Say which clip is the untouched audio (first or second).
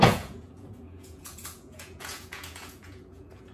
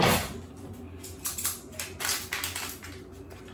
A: second